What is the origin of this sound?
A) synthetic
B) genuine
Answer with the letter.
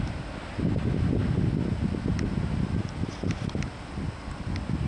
B